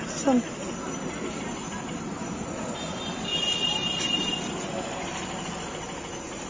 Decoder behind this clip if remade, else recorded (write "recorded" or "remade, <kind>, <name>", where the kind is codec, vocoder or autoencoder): recorded